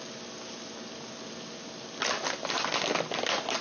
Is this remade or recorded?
recorded